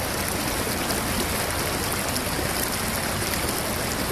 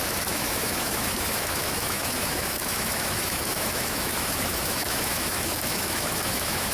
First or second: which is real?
first